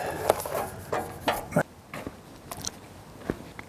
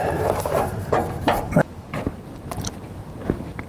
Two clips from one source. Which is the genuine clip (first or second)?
first